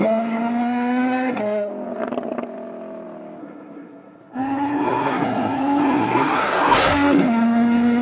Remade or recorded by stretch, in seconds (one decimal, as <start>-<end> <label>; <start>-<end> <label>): 0.0-1.7 remade; 1.7-3.4 recorded; 3.4-8.0 remade